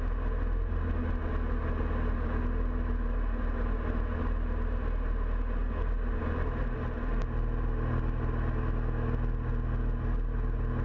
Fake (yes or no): no